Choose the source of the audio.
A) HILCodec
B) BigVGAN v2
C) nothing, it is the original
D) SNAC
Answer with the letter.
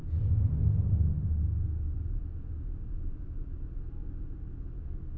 C